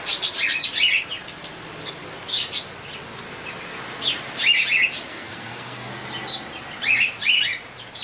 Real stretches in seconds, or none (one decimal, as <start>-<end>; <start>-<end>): 0.0-5.1; 5.9-8.0